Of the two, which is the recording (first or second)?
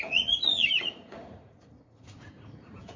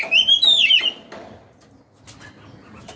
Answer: second